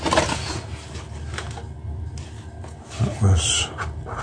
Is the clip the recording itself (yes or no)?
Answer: yes